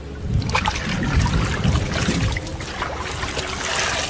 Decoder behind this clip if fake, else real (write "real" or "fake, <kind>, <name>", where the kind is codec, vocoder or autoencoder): real